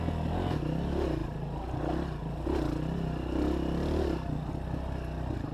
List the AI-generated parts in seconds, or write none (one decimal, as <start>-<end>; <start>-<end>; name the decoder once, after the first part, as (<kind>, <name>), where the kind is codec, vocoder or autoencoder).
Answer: none